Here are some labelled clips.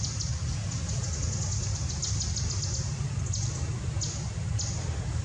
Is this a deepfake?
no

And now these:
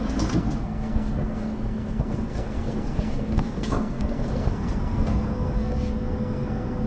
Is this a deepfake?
yes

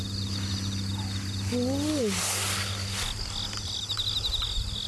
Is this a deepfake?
no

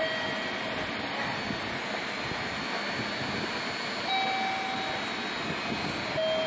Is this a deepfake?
no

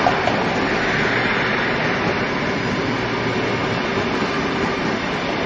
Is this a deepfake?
no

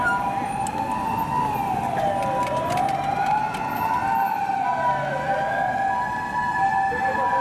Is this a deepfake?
no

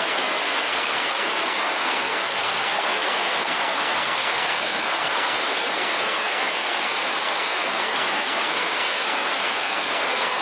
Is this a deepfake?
yes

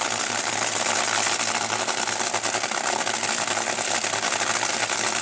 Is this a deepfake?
no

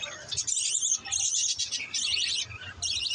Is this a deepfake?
no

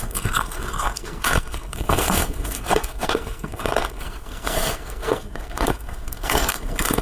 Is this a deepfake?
yes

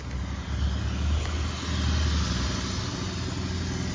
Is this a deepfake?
no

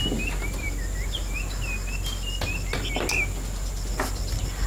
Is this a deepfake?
no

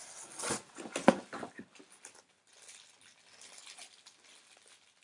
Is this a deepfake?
no